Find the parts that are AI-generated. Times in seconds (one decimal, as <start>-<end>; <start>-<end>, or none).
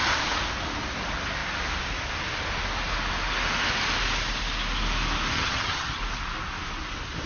5.3-6.0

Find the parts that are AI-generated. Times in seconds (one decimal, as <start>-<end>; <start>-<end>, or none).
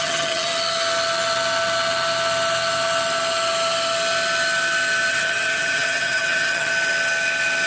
0.0-0.5; 5.1-6.7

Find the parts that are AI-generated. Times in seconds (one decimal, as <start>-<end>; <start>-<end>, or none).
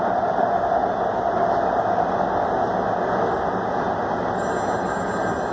none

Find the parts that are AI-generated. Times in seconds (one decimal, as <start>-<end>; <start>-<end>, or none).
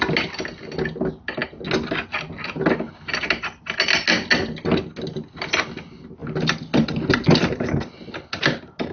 none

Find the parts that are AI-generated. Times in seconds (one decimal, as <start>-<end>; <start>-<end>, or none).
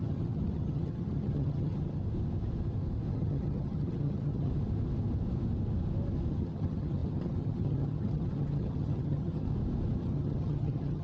0.0-2.0; 3.1-4.5; 6.3-9.5; 10.0-11.0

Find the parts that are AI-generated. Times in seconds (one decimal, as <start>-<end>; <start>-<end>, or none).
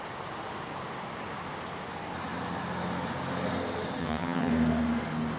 4.0-4.5